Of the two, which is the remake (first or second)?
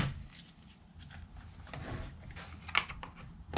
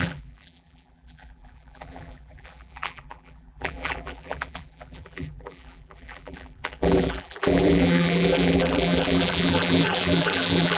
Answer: second